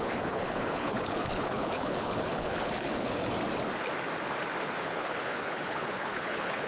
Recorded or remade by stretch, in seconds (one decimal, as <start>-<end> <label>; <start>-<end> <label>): 0.0-3.2 remade; 3.2-4.8 recorded; 4.8-6.7 remade